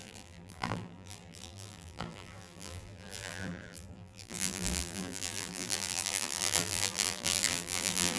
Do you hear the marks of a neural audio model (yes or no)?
yes